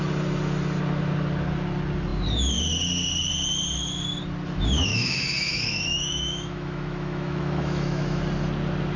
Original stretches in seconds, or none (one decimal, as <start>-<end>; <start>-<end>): 0.0-4.9; 8.2-9.0